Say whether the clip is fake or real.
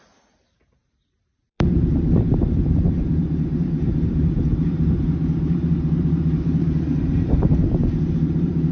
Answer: fake